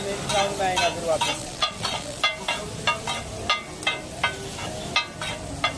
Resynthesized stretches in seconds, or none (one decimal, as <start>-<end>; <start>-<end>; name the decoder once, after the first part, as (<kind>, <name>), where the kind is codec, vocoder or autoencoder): 1.4-2.2 (vocoder, Vocos)